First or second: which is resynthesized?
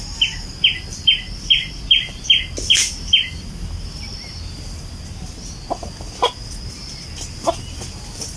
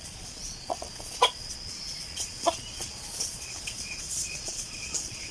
second